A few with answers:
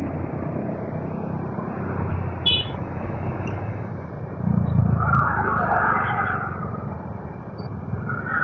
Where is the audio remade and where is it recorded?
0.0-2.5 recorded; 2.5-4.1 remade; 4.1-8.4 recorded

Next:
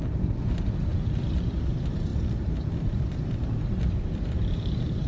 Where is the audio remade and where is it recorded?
0.0-5.1 remade

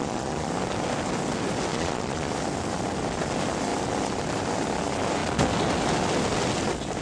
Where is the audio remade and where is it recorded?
0.0-0.5 remade; 0.5-1.7 recorded; 1.7-2.3 remade; 2.3-7.0 recorded

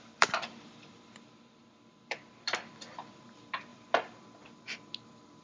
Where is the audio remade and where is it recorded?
0.0-5.4 remade